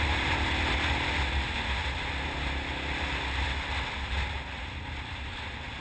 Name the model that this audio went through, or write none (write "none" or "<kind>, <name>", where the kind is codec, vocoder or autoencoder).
none